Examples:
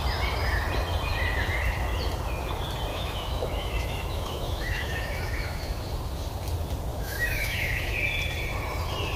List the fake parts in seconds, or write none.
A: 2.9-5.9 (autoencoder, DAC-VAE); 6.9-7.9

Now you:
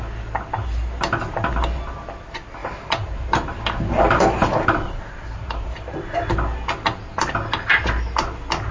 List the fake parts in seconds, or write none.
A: 2.6-6.3 (vocoder, BigVGAN v2)

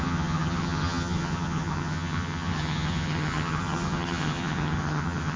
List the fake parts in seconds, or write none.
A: 0.0-5.4 (vocoder, HiFi-GAN)

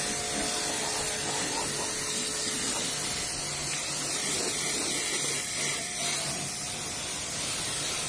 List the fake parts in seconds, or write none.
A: none

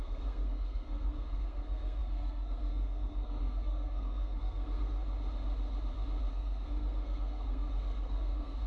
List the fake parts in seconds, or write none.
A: 0.0-5.0 (codec, SNAC); 6.3-8.7

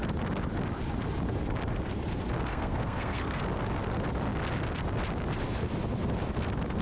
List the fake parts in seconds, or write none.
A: 2.5-3.4 (codec, SNAC)